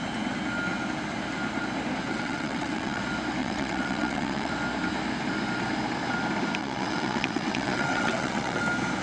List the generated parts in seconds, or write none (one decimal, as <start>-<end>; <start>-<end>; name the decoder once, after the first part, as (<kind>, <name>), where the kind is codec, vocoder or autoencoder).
2.1-3.0 (vocoder, WaveNeXt); 3.4-4.5; 6.6-8.6